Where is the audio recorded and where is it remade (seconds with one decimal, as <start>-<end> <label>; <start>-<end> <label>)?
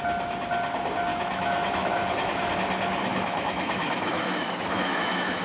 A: 0.0-1.1 recorded; 1.1-2.5 remade; 2.5-3.0 recorded; 3.0-5.4 remade